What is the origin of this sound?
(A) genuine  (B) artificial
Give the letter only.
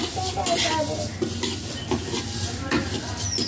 A